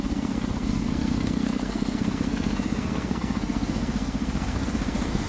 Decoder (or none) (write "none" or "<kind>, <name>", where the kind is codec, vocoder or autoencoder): codec, SNAC